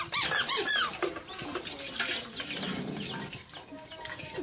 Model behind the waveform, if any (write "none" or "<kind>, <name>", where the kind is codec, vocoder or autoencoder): none